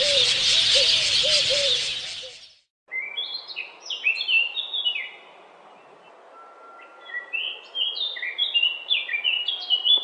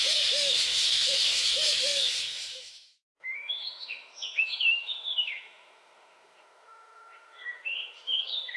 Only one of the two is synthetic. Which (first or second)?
second